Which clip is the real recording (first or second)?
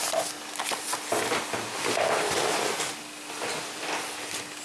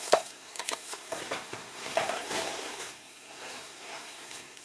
first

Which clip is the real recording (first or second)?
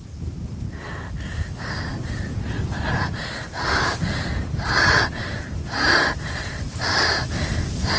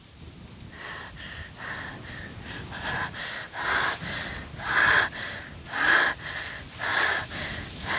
second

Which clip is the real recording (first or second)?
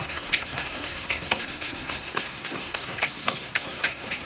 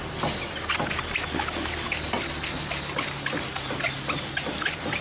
second